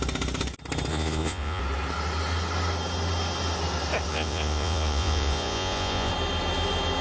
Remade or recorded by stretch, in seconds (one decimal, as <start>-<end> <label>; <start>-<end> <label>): 0.0-0.9 recorded; 0.9-1.6 remade; 1.6-4.1 recorded; 4.1-6.1 remade; 6.1-7.0 recorded